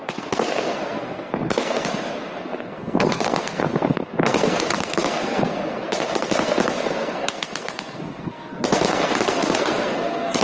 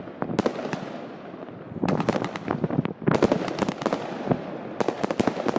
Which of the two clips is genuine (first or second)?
second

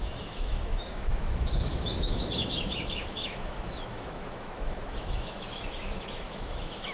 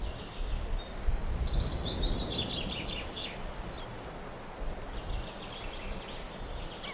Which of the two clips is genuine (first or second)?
second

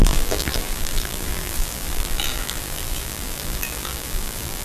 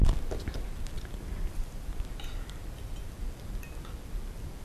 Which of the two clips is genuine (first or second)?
second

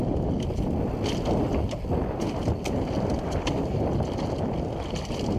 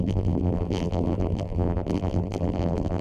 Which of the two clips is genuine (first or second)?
first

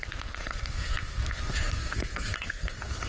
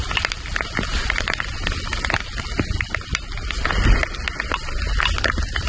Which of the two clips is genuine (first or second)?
second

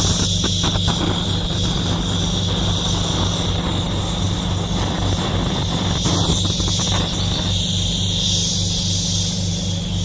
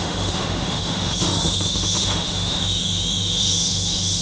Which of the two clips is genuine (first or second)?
first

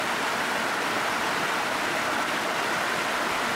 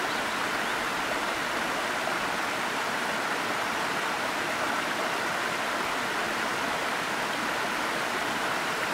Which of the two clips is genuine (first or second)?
first